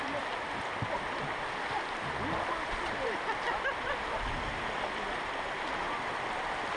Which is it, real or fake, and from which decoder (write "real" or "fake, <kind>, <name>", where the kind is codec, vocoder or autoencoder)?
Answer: real